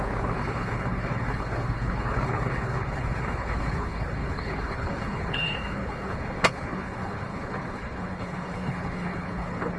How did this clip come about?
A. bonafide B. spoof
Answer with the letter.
B